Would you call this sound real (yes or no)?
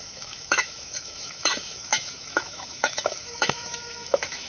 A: no